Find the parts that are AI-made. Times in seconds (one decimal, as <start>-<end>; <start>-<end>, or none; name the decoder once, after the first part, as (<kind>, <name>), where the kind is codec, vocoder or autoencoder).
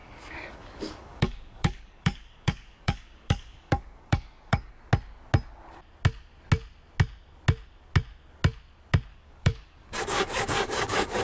0.0-4.7 (codec, DAC); 9.1-11.2